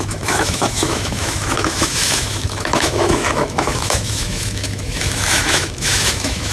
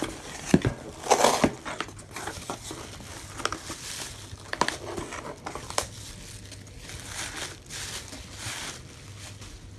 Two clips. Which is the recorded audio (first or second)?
second